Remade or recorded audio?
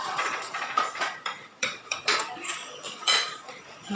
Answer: remade